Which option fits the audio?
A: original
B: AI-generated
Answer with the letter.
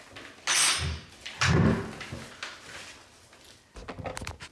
A